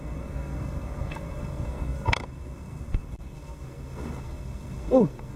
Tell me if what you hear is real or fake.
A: fake